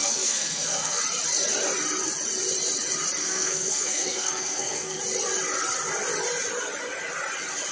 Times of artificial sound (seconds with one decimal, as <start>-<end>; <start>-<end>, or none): 0.0-1.0; 3.2-5.0